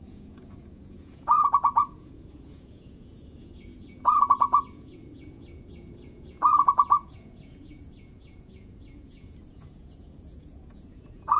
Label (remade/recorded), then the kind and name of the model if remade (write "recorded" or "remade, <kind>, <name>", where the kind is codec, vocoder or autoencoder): remade, vocoder, Vocos